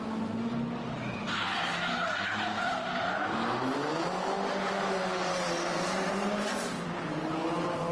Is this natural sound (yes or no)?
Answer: yes